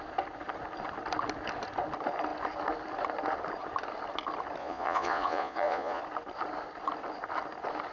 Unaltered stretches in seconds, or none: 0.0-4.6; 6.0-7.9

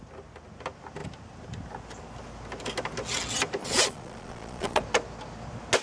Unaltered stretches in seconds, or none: 0.0-3.6; 4.8-5.8

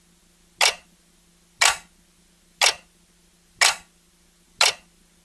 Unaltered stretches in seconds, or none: 0.0-5.2